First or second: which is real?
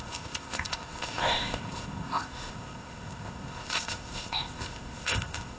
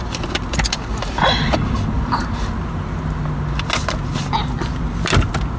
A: second